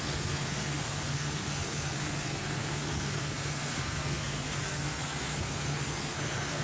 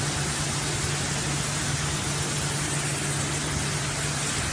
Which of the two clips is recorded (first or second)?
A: second